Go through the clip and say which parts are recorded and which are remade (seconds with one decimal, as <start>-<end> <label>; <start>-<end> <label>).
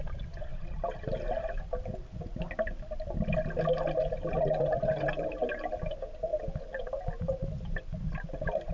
0.0-8.7 recorded